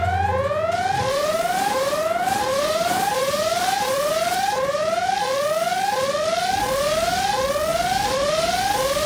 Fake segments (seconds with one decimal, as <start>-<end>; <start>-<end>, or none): 1.2-5.1